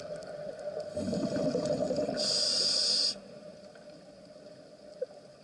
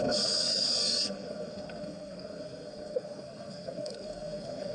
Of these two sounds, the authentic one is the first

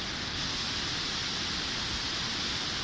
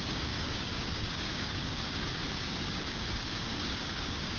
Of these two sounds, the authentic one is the first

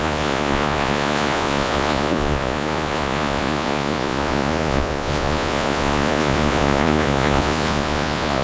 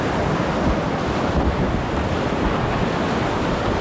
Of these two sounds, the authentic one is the second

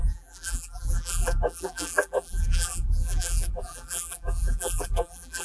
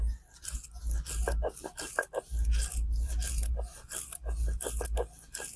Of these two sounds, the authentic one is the second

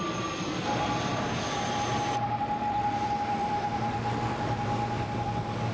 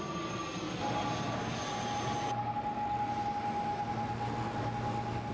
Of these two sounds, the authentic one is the second